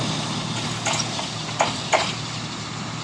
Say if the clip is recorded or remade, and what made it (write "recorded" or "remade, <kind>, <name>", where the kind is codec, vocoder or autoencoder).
recorded